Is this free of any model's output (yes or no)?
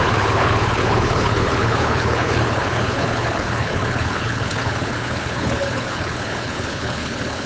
no